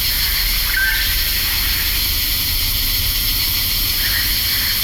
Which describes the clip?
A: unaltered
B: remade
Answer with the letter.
A